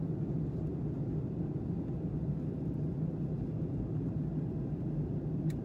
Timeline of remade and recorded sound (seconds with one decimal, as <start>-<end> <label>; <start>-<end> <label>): 0.0-5.6 recorded

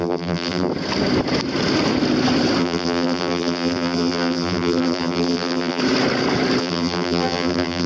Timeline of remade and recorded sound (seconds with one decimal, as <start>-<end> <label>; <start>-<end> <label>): 0.0-0.7 remade; 0.7-2.6 recorded; 2.6-5.8 remade; 5.8-6.6 recorded; 6.6-7.9 remade

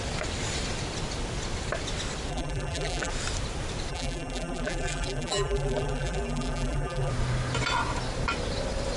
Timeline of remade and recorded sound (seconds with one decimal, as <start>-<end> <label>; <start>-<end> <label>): 0.0-2.3 recorded; 2.3-3.1 remade; 3.1-3.9 recorded; 3.9-7.1 remade; 7.1-9.0 recorded

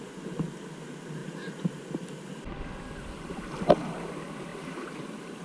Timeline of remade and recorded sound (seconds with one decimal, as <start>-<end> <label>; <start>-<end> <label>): 0.0-4.5 recorded; 4.5-5.4 remade

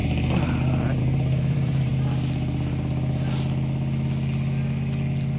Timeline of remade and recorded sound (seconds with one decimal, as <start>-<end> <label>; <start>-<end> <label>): 0.0-1.0 recorded; 1.0-1.9 remade; 1.9-5.4 recorded

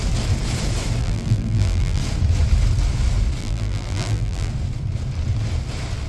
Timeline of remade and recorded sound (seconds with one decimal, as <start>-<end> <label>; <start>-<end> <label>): 0.0-1.0 recorded; 1.0-2.0 remade; 2.0-3.4 recorded; 3.4-4.5 remade; 4.5-6.1 recorded

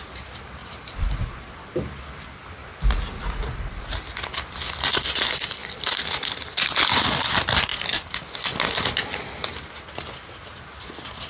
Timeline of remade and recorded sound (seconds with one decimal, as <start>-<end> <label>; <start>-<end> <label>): 0.0-0.6 recorded; 0.6-1.8 remade; 1.8-2.7 recorded; 2.7-3.8 remade; 3.8-5.6 recorded; 5.6-6.3 remade; 6.3-11.3 recorded